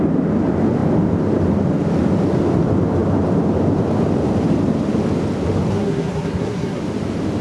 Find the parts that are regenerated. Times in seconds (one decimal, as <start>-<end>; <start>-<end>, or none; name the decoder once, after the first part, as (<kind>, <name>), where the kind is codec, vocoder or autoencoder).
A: 5.7-6.8 (codec, SNAC)